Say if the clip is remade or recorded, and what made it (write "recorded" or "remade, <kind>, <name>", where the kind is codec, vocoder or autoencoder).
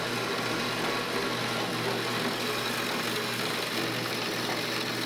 recorded